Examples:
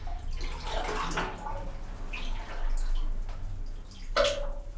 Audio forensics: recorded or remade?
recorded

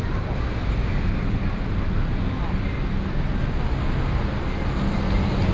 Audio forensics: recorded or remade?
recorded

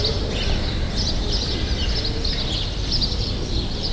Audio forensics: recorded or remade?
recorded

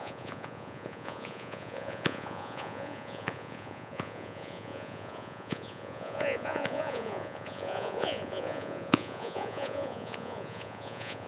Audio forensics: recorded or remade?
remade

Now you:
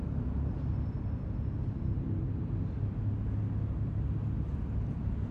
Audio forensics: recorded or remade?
recorded